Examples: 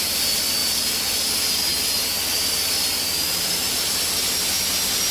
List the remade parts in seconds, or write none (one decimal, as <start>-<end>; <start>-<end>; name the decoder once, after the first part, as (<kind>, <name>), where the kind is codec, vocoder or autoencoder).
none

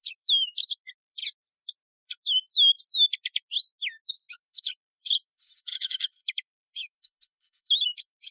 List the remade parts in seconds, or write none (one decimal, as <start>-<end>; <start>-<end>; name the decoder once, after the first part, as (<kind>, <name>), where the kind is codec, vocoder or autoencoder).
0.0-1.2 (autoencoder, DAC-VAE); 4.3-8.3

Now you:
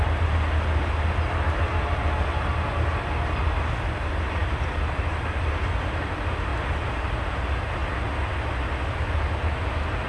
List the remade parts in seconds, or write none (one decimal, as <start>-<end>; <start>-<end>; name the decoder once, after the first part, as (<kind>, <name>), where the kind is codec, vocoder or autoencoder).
none

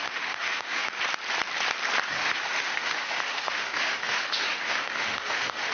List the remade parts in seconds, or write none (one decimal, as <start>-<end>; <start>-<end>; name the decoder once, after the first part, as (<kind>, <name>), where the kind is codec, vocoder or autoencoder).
0.0-0.9 (autoencoder, DAC-VAE); 2.1-5.7

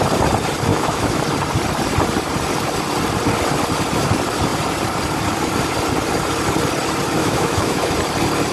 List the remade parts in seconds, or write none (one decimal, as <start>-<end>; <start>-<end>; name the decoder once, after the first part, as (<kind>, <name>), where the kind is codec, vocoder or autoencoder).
0.7-1.2 (autoencoder, DAC-VAE); 7.2-7.9

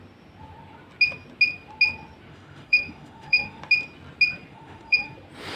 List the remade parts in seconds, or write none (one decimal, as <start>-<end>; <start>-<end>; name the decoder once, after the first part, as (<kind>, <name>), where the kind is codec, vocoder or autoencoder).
2.3-3.6 (autoencoder, DAC-VAE); 4.5-5.1